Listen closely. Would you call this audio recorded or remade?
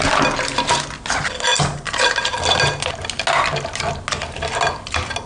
recorded